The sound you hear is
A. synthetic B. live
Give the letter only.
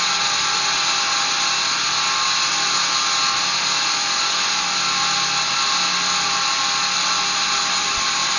B